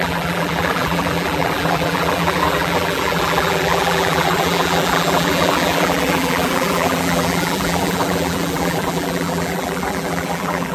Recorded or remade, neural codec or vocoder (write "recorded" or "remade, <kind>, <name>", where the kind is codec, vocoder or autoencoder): remade, vocoder, BigVGAN v2